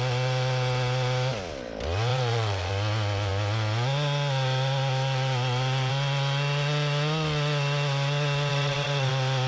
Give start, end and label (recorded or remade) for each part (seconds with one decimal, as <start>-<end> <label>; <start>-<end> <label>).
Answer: 0.0-2.1 recorded; 2.1-2.7 remade; 2.7-8.5 recorded; 8.5-9.1 remade; 9.1-9.5 recorded